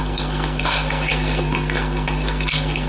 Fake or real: fake